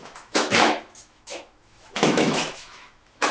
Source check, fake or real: fake